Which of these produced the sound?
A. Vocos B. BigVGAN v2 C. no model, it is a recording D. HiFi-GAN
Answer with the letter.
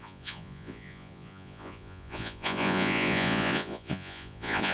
A